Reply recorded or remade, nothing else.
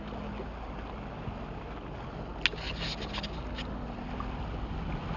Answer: recorded